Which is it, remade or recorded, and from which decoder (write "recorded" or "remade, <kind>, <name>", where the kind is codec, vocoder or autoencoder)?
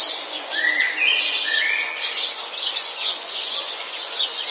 remade, vocoder, Vocos